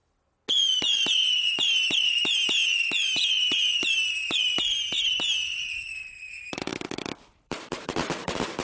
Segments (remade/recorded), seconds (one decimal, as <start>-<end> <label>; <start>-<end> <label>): 0.0-0.8 recorded; 0.8-6.7 remade; 6.7-7.3 recorded; 7.3-8.6 remade